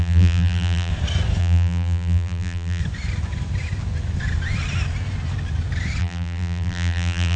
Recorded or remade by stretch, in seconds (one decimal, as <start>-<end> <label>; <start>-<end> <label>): 0.0-0.9 remade; 0.9-1.4 recorded; 1.4-2.8 remade; 2.8-6.0 recorded; 6.0-7.4 remade